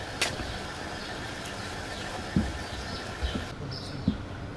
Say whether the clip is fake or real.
real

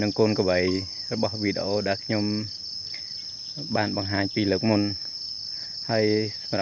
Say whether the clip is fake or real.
real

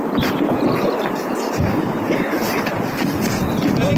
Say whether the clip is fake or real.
real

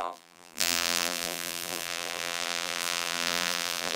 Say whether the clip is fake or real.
fake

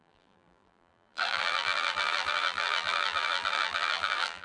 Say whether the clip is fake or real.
fake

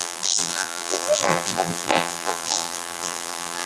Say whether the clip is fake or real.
fake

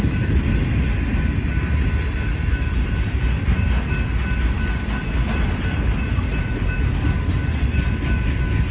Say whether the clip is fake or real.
real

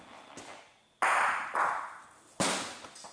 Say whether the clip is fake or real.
real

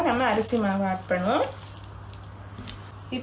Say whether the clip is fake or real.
real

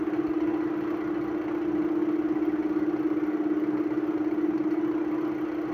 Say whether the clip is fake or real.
real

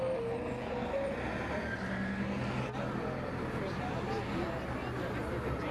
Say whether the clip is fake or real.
real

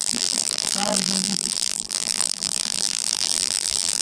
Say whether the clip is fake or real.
fake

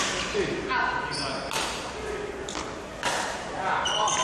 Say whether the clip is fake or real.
real